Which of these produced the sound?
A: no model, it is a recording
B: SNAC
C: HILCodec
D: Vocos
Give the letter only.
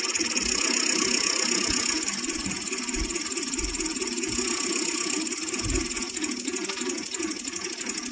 A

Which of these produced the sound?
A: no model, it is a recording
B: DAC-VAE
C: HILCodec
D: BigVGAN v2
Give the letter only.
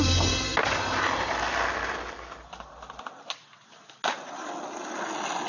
A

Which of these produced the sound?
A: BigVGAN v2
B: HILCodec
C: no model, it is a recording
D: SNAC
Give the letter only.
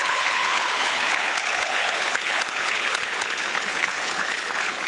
B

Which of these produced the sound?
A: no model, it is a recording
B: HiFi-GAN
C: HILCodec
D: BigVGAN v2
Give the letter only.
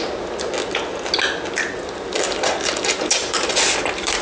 A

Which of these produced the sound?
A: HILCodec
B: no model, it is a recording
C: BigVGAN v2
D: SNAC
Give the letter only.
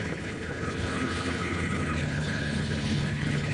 A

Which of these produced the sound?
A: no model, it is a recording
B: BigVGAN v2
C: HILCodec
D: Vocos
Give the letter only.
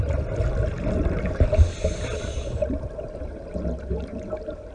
A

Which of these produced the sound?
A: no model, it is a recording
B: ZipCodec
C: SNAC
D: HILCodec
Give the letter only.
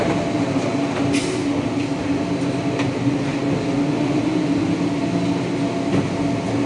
A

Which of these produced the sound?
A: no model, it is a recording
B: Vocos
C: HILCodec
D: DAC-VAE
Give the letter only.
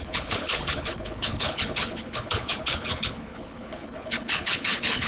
C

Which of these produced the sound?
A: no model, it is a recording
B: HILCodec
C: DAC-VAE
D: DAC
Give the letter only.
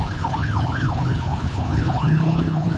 B